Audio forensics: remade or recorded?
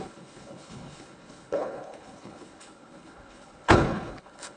remade